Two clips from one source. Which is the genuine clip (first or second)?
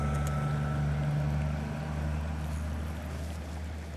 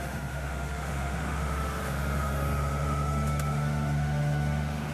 first